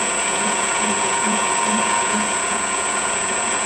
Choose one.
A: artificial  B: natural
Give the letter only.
A